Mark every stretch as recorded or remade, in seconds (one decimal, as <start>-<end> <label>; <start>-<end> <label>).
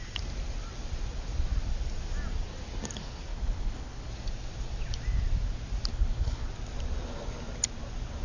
0.0-3.3 recorded; 3.3-4.1 remade; 4.1-5.9 recorded; 5.9-6.5 remade; 6.5-8.2 recorded